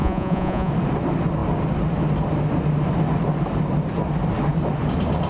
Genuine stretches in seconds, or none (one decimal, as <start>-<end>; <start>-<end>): 0.7-5.3